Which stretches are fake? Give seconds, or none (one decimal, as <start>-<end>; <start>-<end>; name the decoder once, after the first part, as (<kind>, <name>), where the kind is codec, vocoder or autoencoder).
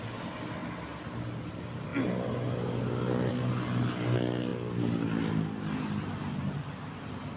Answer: none